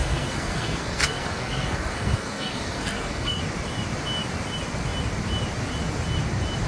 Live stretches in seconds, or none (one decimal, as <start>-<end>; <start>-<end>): 3.4-6.7